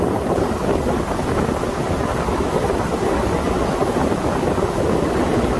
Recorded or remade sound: recorded